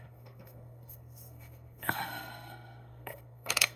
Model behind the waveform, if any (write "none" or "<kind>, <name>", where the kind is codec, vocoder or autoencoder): codec, SNAC